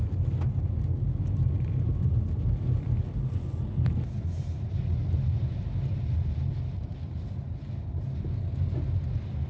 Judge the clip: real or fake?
real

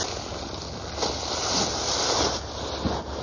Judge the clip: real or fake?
real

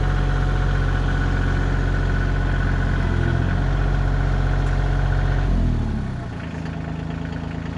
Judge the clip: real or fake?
real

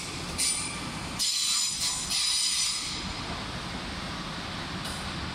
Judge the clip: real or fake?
real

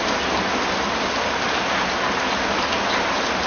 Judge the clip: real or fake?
real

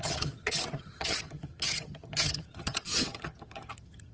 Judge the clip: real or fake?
fake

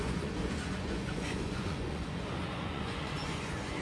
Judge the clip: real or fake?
fake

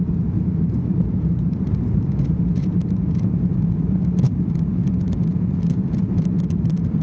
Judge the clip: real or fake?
fake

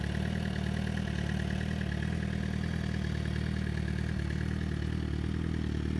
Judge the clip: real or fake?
real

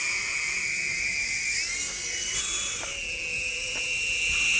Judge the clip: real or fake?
real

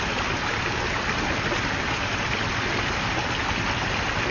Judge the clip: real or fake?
real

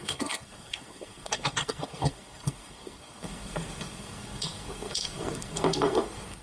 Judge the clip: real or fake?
fake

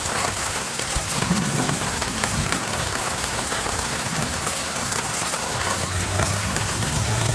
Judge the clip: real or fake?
fake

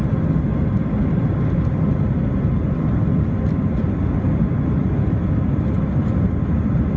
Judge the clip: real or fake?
real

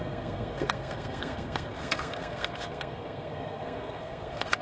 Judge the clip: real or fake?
fake